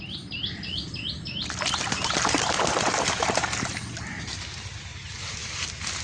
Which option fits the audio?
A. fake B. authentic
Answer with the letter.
B